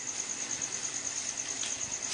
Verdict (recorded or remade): recorded